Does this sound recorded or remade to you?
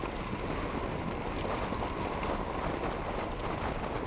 recorded